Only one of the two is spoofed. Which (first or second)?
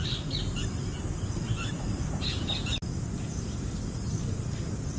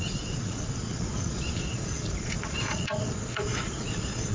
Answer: second